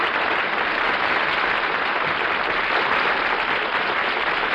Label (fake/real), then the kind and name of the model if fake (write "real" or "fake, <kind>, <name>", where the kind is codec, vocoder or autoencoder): real